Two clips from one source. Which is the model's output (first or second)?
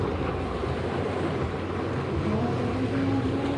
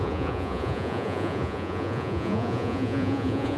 second